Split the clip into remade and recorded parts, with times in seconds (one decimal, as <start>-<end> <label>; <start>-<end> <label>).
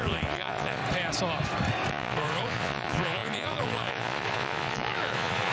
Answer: 0.0-0.8 remade; 0.8-1.9 recorded; 1.9-5.5 remade